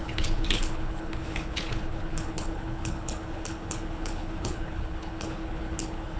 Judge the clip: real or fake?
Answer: fake